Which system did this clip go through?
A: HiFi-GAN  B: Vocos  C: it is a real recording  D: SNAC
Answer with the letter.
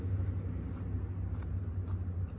C